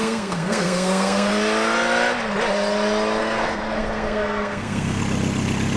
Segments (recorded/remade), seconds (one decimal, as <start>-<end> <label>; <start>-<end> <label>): 0.0-1.3 remade; 1.3-3.2 recorded; 3.2-5.0 remade; 5.0-5.8 recorded